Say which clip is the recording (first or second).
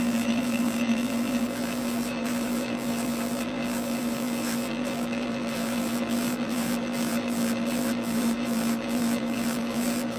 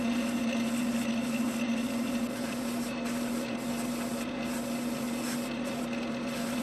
second